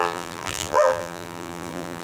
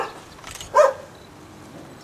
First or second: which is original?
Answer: second